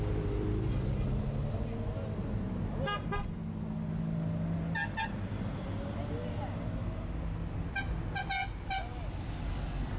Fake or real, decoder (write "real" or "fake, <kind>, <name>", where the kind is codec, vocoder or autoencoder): real